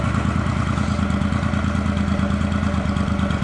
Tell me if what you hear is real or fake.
real